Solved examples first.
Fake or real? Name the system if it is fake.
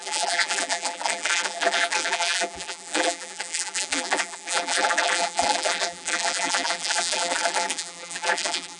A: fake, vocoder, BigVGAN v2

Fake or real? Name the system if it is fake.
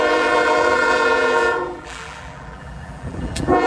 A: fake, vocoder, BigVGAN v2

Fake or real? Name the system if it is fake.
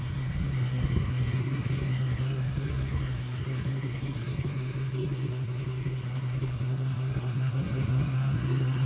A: fake, codec, SNAC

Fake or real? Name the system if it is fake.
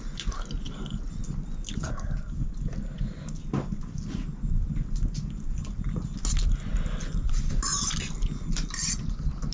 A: real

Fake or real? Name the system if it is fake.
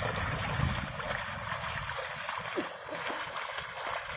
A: real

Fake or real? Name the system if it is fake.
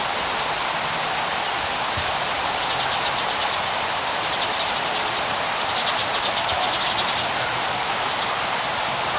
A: real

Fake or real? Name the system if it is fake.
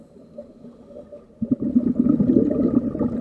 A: real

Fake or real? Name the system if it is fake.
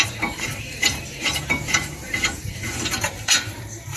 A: fake, vocoder, BigVGAN v2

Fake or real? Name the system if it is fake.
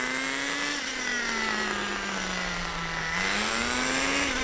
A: real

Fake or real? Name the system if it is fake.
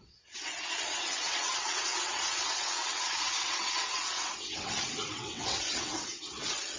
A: fake, vocoder, WaveNeXt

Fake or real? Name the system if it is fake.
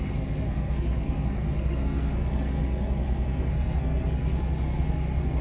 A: fake, codec, SNAC